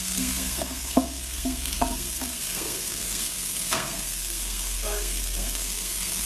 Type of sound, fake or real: fake